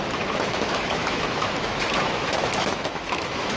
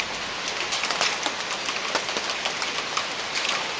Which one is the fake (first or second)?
first